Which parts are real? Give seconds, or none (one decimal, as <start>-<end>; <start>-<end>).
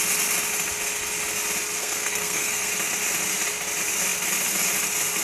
0.0-1.8; 2.7-5.2